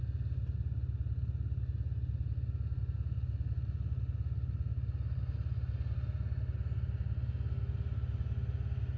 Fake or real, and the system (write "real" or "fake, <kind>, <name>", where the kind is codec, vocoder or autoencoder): real